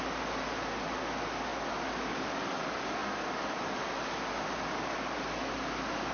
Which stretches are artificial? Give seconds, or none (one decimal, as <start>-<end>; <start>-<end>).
none